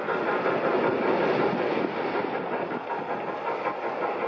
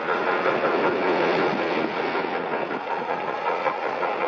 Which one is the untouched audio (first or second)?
first